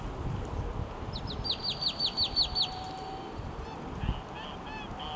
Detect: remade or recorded recorded